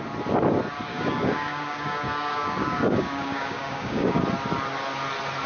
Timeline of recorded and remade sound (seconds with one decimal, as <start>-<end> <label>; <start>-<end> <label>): 0.0-0.9 recorded; 0.9-4.2 remade; 4.2-5.5 recorded